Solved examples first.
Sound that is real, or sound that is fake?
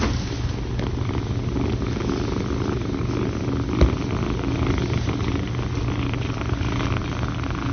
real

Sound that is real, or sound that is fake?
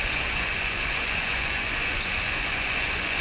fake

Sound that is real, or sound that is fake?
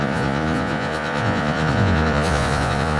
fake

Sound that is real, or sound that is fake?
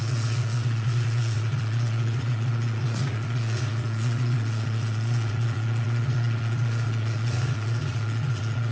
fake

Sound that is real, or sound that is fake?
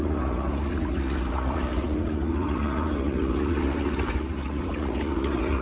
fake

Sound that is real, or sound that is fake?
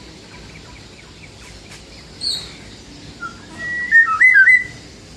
real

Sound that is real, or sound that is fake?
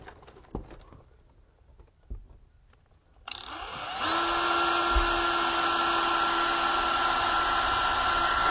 real